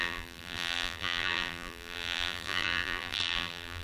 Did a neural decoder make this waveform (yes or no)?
yes